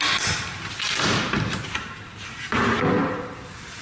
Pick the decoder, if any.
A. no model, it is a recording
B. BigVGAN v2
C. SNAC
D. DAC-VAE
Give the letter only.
B